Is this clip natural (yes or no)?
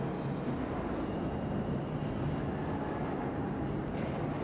yes